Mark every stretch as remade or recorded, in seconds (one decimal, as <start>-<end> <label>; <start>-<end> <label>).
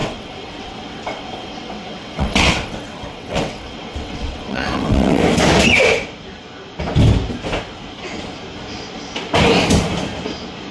0.0-5.2 remade; 5.2-10.7 recorded